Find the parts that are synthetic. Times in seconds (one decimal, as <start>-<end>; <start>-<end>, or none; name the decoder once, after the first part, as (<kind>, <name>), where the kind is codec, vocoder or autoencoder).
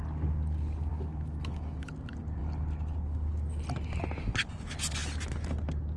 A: 0.9-1.9 (autoencoder, DAC-VAE)